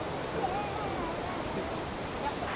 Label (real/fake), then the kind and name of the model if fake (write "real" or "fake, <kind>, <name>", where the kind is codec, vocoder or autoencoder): real